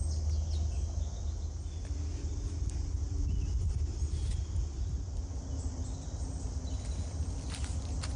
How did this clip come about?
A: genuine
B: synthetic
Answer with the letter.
A